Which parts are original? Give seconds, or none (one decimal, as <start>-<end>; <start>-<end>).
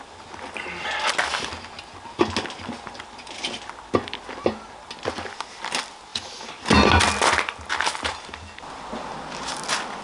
0.0-10.0